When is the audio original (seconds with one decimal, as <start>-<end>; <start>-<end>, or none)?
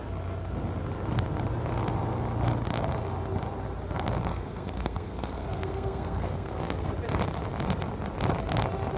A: 0.0-4.3; 6.9-9.0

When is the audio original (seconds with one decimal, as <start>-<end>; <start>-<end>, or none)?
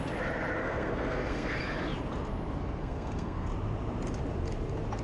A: 0.0-0.6; 1.6-2.8; 3.5-5.0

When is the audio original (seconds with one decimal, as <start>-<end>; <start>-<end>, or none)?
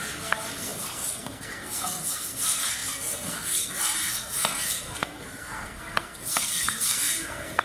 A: none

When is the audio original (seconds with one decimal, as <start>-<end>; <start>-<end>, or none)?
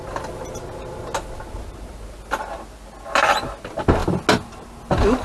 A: 0.0-5.2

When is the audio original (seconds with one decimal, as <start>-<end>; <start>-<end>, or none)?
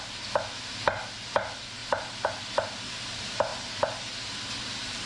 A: 0.0-5.1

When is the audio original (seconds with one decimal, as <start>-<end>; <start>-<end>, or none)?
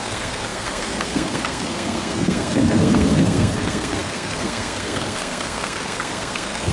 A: none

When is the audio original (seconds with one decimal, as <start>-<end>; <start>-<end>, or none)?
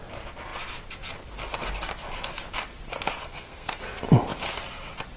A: 0.0-3.2; 3.8-5.2